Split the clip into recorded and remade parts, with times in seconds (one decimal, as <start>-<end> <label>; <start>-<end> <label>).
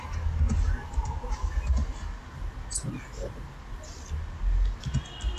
0.0-5.4 recorded